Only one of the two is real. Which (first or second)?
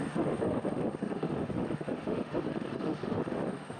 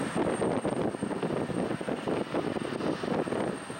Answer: second